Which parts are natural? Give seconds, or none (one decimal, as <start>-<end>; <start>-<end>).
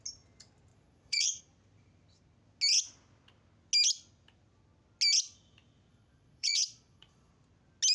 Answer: 0.0-0.7; 1.4-5.9; 7.3-7.9